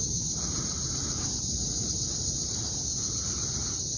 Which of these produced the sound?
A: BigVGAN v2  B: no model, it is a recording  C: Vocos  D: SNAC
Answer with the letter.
A